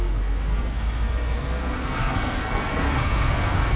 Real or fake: fake